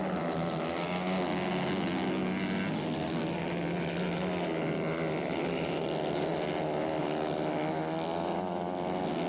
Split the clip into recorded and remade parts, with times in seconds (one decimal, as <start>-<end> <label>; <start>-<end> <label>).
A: 0.0-9.3 recorded